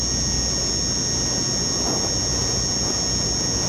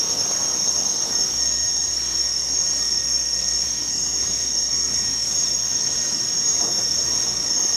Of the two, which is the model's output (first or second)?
second